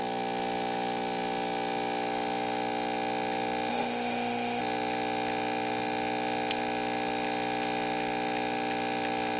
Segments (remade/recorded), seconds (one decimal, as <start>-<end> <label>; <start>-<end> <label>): 0.0-3.7 recorded; 3.7-4.6 remade; 4.6-9.4 recorded